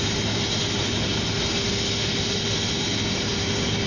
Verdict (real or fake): real